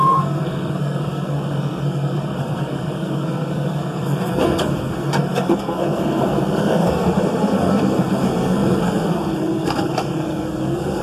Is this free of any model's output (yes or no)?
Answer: no